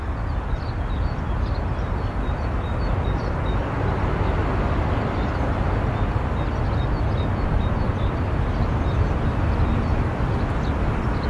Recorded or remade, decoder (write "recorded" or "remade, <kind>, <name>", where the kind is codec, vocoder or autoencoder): recorded